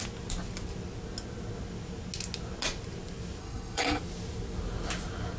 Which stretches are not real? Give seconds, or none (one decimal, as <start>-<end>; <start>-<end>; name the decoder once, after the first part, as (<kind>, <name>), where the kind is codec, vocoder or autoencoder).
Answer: 3.4-4.0 (codec, HILCodec)